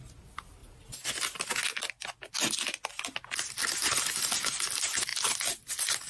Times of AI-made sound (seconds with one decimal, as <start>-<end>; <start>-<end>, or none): none